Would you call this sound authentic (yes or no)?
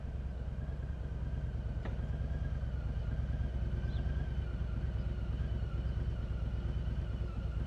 yes